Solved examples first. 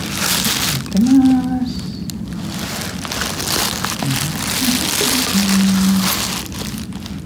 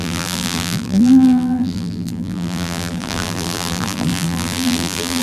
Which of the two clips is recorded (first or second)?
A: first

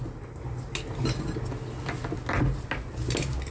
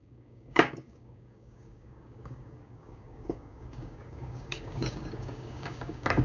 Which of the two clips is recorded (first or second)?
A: first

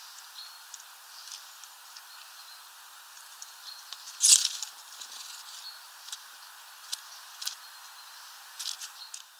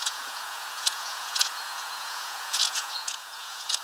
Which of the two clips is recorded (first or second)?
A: first